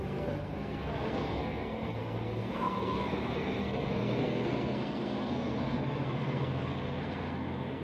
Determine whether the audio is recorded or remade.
remade